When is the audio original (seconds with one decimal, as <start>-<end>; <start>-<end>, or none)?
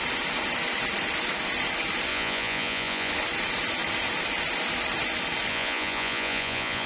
0.0-2.1; 3.1-5.5